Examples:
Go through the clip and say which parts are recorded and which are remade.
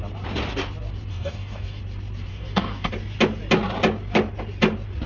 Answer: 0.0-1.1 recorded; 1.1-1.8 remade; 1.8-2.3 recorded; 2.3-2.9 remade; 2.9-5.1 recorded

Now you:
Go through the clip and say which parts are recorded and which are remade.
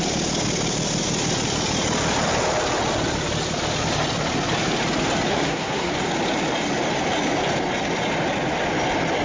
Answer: 0.0-5.3 recorded; 5.3-5.9 remade; 5.9-9.2 recorded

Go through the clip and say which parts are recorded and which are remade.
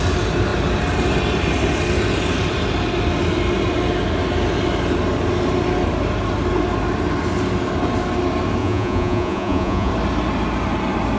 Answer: 0.0-8.6 recorded; 8.6-9.9 remade; 9.9-11.2 recorded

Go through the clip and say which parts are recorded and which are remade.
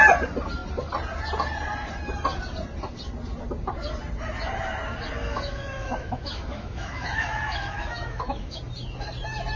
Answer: 0.0-5.2 recorded; 5.2-8.6 remade; 8.6-9.6 recorded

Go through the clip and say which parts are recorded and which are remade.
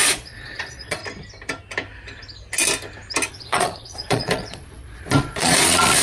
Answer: 0.0-1.0 remade; 1.0-3.3 recorded; 3.3-6.0 remade